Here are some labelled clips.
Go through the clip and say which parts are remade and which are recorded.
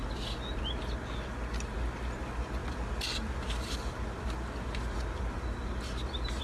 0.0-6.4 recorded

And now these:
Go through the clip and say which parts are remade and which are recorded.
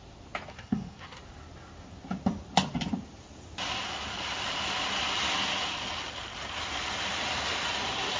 0.0-0.5 recorded; 0.5-1.2 remade; 1.2-8.2 recorded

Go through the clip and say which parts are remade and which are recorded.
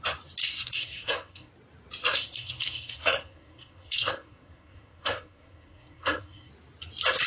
0.0-0.4 recorded; 0.4-1.5 remade; 1.5-2.1 recorded; 2.1-6.5 remade; 6.5-7.3 recorded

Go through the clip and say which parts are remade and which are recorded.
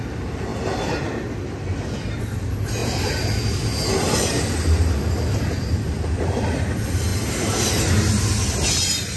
0.0-9.2 recorded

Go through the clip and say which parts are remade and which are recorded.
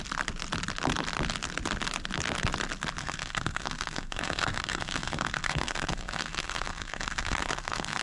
0.0-3.0 recorded; 3.0-8.0 remade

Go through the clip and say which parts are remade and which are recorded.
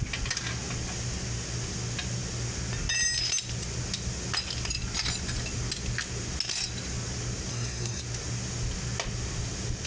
0.0-7.5 recorded; 7.5-8.0 remade; 8.0-9.9 recorded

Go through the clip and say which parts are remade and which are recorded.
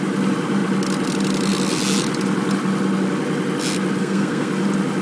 0.0-4.0 recorded; 4.0-4.5 remade; 4.5-5.0 recorded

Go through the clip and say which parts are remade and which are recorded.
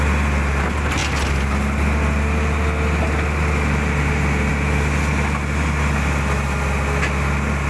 0.0-7.7 recorded